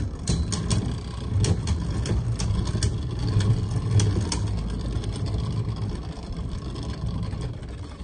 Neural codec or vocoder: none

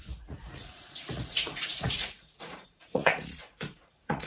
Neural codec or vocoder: vocoder, Vocos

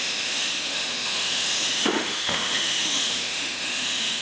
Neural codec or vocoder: autoencoder, DAC-VAE